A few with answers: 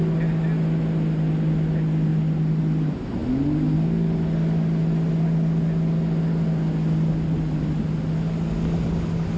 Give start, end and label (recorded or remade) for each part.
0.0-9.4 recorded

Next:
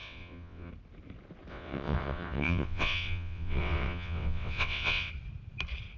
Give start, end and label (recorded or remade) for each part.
0.0-0.7 remade; 0.7-1.5 recorded; 1.5-5.1 remade; 5.1-6.0 recorded